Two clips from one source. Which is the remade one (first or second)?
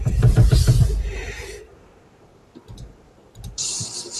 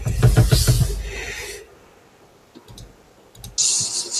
first